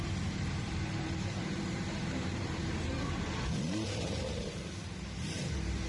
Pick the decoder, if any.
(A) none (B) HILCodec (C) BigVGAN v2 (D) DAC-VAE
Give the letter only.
C